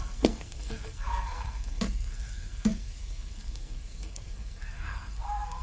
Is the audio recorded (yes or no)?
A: no